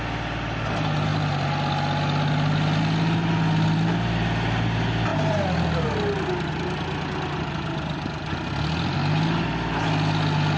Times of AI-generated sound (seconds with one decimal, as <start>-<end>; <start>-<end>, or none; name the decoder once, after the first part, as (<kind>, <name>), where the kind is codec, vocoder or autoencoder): none